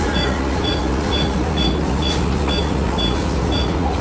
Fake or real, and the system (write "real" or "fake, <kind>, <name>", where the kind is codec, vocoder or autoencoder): fake, vocoder, Vocos